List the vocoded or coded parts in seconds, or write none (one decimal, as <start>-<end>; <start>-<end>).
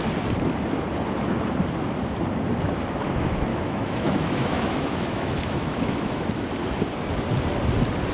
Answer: 3.5-6.3